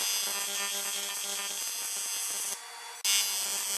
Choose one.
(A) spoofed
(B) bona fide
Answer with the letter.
B